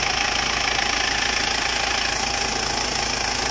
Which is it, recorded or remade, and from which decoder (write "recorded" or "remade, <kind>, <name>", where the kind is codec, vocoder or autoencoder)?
recorded